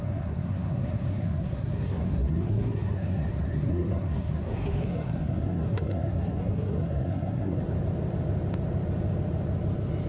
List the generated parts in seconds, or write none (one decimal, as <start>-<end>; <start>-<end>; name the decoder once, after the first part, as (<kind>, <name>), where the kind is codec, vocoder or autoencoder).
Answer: 0.0-7.6 (codec, SNAC)